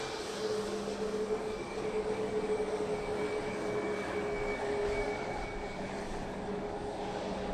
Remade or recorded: remade